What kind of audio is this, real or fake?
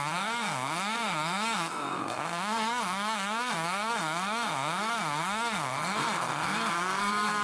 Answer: fake